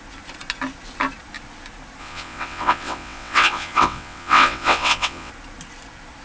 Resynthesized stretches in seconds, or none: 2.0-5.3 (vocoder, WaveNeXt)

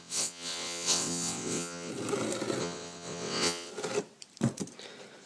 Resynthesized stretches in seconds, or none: 0.0-1.9 (vocoder, WaveNeXt); 2.6-3.7

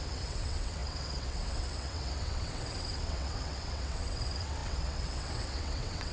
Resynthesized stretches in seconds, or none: 0.0-6.1 (vocoder, WaveNeXt)

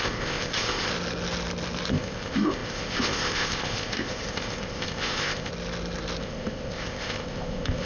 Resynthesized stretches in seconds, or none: 0.0-0.9 (codec, ZipCodec); 1.9-5.5; 6.2-7.9

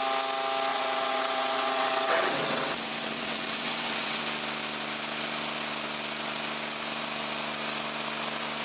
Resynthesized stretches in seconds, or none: 0.7-4.2 (vocoder, WaveNeXt)

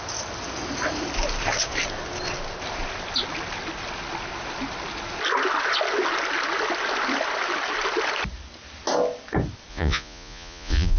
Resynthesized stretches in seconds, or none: 9.7-11.0 (vocoder, Vocos)